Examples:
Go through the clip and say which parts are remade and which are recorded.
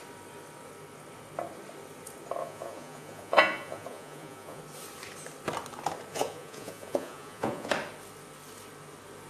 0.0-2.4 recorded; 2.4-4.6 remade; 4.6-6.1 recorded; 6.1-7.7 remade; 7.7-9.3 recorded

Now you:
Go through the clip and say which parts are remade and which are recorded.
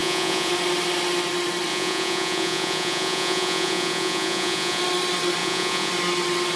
0.0-0.5 remade; 0.5-1.7 recorded; 1.7-4.8 remade; 4.8-5.4 recorded; 5.4-5.9 remade; 5.9-6.6 recorded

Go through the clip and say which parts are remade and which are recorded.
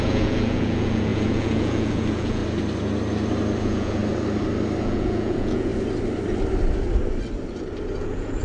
0.0-2.4 remade; 2.4-3.6 recorded; 3.6-4.0 remade; 4.0-4.8 recorded; 4.8-5.7 remade; 5.7-8.0 recorded; 8.0-8.4 remade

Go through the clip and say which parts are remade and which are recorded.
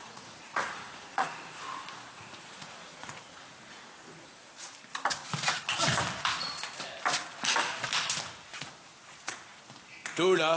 0.0-3.3 remade; 3.3-10.6 recorded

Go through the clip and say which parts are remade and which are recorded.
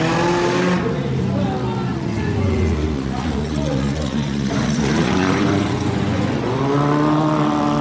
0.0-1.9 recorded; 1.9-6.6 remade; 6.6-7.8 recorded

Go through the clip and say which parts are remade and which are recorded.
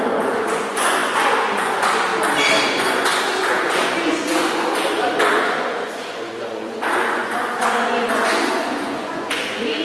0.0-2.1 remade; 2.1-2.7 recorded; 2.7-9.8 remade